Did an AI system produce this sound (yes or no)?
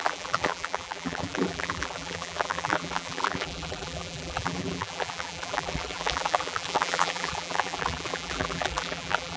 yes